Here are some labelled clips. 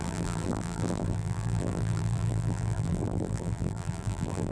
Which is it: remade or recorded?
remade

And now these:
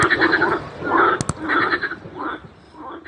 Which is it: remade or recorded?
recorded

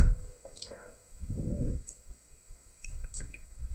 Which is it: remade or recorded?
remade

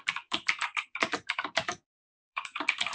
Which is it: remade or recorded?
remade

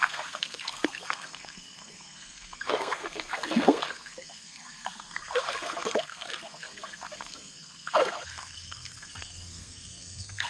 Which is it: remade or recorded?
remade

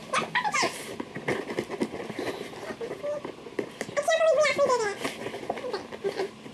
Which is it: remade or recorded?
recorded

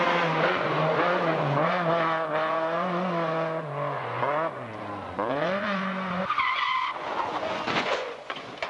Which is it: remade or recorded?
remade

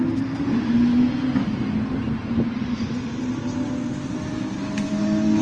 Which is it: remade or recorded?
recorded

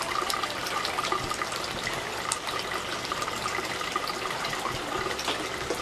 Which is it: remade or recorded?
recorded